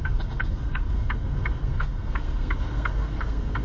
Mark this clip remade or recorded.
remade